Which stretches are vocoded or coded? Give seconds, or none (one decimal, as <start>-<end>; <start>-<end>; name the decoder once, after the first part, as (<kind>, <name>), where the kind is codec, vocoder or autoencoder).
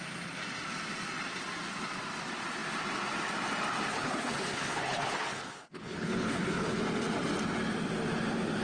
3.9-6.8 (codec, HILCodec)